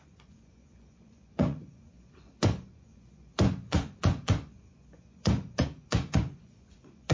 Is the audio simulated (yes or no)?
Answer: yes